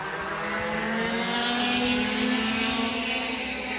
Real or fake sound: real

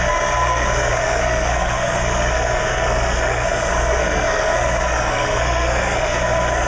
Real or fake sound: fake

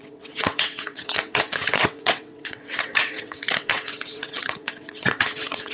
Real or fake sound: fake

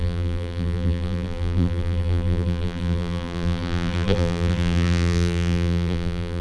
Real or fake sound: fake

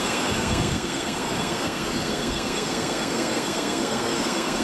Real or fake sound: fake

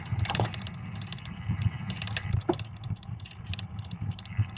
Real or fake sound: fake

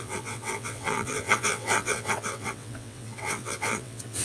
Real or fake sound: fake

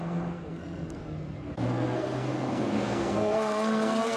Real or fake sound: fake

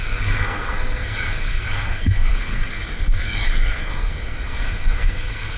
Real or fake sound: fake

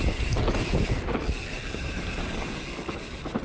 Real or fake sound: real